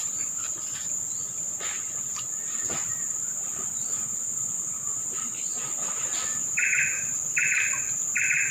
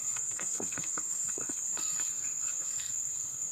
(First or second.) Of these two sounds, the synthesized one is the second